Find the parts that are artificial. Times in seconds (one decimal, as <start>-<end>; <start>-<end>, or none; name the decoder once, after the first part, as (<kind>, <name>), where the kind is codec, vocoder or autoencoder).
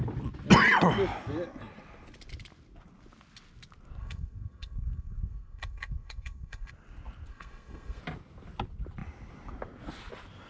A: 4.0-6.7 (codec, SNAC); 7.3-8.0